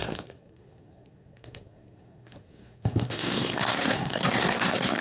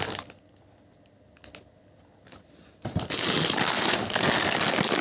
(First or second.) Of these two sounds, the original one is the second